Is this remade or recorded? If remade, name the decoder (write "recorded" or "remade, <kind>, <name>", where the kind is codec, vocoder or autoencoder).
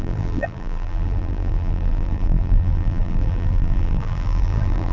remade, vocoder, BigVGAN v2